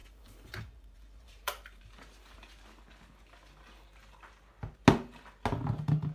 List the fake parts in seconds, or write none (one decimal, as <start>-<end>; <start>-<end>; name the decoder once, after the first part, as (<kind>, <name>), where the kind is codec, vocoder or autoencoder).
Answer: 0.0-1.8 (vocoder, BigVGAN v2)